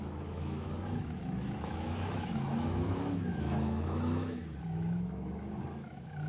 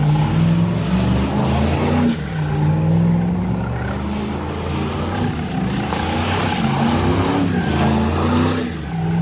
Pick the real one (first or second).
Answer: second